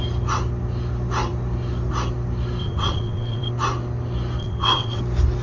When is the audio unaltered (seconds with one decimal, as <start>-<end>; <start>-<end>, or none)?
0.0-2.6; 3.5-4.4; 5.0-5.4